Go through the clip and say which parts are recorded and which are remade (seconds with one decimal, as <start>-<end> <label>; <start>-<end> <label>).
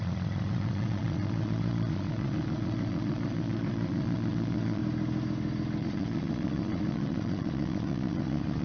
0.0-4.8 remade; 4.8-5.8 recorded; 5.8-8.6 remade